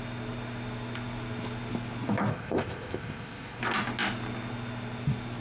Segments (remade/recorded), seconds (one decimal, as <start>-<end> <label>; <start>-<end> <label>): 0.0-2.3 recorded; 2.3-3.6 remade; 3.6-5.4 recorded